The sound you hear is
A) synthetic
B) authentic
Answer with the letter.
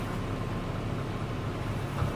B